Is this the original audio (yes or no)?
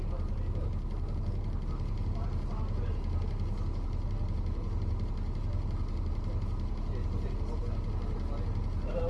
yes